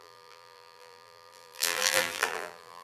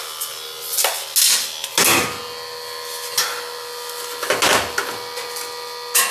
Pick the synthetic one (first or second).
first